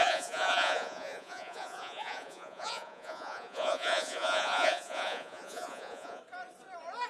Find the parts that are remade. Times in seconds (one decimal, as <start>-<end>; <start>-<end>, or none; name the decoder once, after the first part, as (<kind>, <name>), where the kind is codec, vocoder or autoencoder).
0.0-6.2 (vocoder, Vocos)